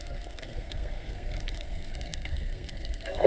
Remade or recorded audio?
remade